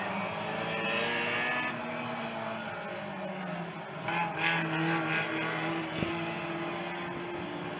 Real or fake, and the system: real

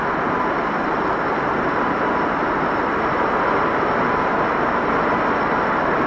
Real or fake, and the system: real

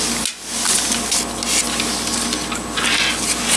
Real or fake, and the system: real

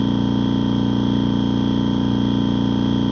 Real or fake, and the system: real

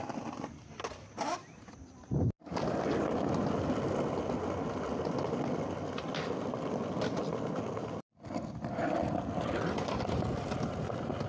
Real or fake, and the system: real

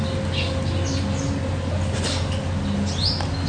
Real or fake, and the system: real